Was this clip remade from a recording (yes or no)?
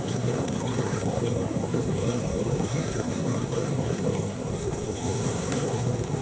yes